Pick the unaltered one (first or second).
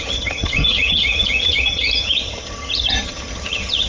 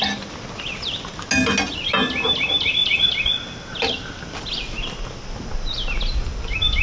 second